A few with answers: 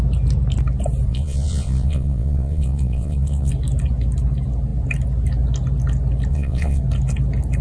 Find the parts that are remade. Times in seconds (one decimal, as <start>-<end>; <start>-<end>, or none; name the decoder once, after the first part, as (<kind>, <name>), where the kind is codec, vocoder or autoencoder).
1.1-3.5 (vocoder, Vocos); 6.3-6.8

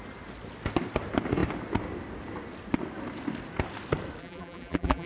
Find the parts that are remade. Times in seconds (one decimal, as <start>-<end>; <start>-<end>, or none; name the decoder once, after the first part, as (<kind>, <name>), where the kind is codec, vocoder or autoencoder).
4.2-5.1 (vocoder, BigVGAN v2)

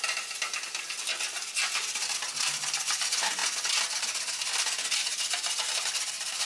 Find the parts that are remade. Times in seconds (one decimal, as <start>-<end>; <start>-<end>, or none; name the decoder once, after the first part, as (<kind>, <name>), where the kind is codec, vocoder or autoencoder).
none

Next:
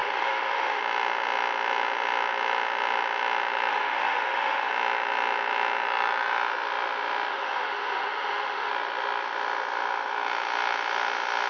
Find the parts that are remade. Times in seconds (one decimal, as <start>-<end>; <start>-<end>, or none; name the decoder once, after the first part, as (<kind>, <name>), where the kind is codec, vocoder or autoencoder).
0.0-0.8 (autoencoder, DAC-VAE); 3.7-4.7; 7.3-8.7